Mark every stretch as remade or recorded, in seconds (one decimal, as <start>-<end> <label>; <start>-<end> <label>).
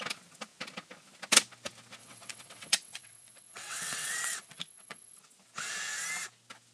0.0-2.0 recorded; 2.0-5.2 remade; 5.2-6.7 recorded